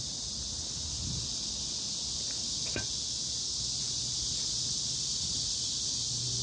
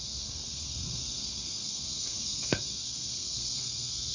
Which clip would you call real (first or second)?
first